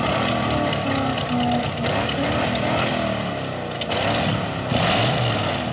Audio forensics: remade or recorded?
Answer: recorded